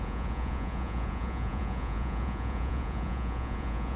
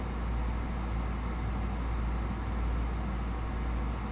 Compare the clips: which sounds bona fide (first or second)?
second